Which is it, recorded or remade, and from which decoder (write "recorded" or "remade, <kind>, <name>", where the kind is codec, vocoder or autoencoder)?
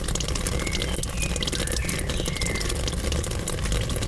recorded